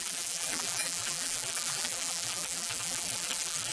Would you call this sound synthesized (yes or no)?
yes